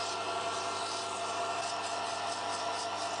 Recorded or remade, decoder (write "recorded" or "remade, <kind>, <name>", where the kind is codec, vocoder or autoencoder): recorded